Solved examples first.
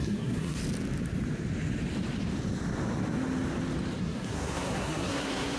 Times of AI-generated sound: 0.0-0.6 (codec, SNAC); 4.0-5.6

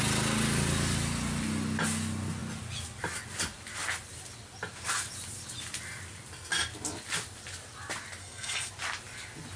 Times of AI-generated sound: 8.2-8.7 (codec, SNAC)

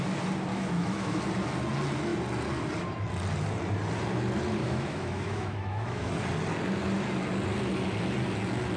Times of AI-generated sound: 0.5-1.2 (autoencoder, DAC-VAE); 4.6-6.1